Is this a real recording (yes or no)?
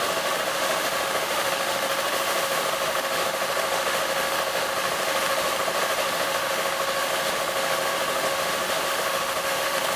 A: no